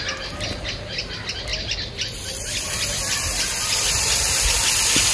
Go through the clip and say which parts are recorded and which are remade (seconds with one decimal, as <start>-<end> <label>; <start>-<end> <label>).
0.0-5.1 recorded